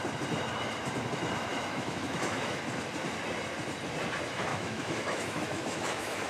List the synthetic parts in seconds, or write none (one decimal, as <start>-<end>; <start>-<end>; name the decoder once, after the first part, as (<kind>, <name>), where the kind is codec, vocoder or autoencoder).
1.5-2.6 (autoencoder, DAC-VAE); 4.5-6.3